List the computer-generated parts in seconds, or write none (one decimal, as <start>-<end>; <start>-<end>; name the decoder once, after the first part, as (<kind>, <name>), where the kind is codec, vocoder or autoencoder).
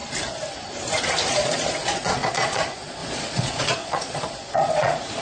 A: 1.3-5.2 (vocoder, Vocos)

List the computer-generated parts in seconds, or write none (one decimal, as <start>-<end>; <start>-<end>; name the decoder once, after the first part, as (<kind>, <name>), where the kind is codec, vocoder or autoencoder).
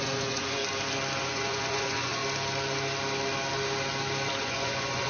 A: 0.0-0.6 (vocoder, Vocos); 1.2-2.2; 4.4-5.1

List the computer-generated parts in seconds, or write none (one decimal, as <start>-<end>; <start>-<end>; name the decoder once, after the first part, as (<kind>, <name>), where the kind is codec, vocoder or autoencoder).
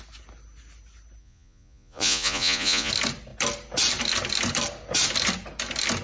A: 1.2-2.9 (vocoder, Vocos)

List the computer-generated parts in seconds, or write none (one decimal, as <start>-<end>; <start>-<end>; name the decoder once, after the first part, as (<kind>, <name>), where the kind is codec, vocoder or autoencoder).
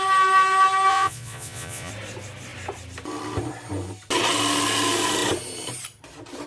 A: 0.9-1.9 (vocoder, Vocos)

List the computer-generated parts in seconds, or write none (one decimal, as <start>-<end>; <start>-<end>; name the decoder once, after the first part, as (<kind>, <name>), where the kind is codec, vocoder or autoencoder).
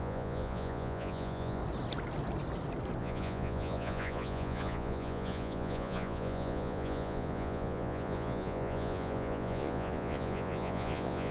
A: 0.0-1.6 (vocoder, Vocos); 3.0-11.3